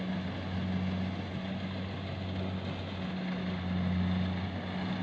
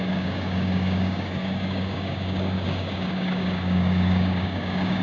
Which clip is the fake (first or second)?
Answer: second